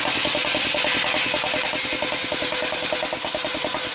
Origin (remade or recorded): recorded